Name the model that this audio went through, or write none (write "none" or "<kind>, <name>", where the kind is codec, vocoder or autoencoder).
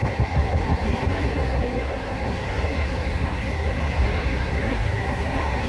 codec, SNAC